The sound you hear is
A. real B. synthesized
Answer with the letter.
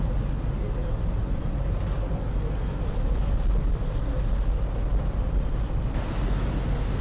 A